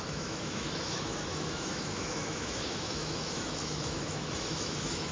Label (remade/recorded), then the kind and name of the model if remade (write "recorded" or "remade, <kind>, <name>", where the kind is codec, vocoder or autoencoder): remade, autoencoder, DAC-VAE